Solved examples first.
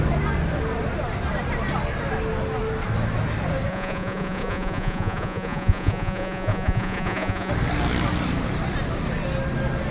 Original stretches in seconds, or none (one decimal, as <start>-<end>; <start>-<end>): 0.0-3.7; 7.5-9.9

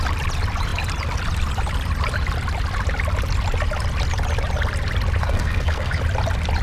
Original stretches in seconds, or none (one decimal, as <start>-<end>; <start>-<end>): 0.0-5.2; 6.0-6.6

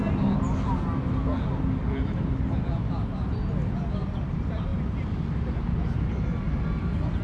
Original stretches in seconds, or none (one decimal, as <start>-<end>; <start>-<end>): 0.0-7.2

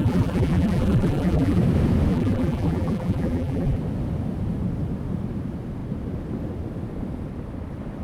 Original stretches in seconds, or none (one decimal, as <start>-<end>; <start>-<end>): 1.6-2.1; 3.8-8.0

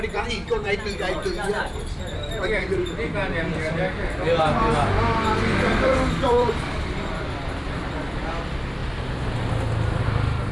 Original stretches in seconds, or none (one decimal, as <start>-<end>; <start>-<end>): 2.8-5.7; 8.8-10.0